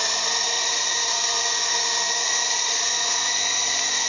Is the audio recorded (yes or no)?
yes